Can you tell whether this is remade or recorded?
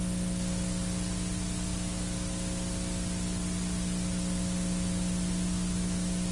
recorded